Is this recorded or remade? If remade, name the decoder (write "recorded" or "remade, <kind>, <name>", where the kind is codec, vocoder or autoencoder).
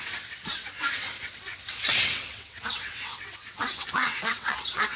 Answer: remade, vocoder, WaveNeXt